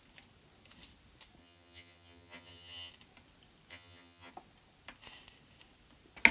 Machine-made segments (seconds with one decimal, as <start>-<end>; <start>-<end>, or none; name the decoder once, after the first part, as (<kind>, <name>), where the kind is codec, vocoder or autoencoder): 1.4-2.9 (vocoder, HiFi-GAN); 3.7-4.3